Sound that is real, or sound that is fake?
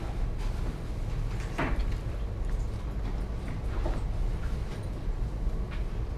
real